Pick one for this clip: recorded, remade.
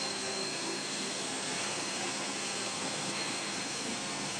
remade